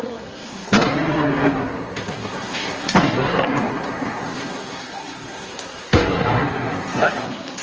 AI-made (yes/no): yes